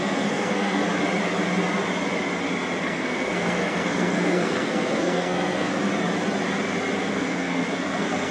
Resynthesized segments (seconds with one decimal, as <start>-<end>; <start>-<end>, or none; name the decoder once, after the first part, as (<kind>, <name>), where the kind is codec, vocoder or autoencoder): 0.0-0.8 (codec, SNAC); 2.8-5.7; 7.1-8.3